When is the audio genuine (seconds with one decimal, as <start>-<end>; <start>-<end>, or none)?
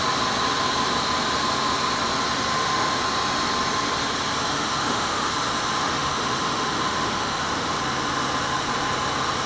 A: 0.0-2.5; 3.0-4.5; 5.3-5.8; 7.8-9.5